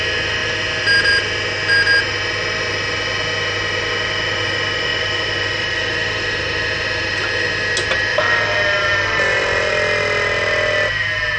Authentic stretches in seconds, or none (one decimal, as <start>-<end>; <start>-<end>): 0.0-8.1; 9.7-11.4